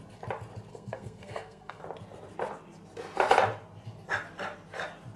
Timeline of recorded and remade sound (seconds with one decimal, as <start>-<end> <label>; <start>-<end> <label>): 0.0-0.7 recorded; 0.7-1.8 remade; 1.8-5.2 recorded